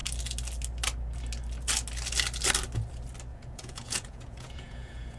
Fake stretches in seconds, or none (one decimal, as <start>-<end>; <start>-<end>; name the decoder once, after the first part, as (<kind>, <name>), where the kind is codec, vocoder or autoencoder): 3.3-5.2 (vocoder, Vocos)

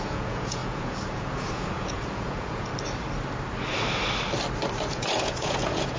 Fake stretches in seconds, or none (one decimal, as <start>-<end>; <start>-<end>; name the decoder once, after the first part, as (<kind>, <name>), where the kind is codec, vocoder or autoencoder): 0.0-2.7 (vocoder, Vocos); 4.9-6.0